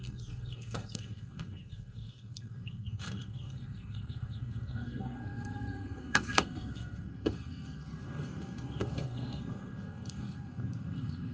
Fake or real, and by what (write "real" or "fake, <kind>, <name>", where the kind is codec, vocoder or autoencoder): fake, codec, SNAC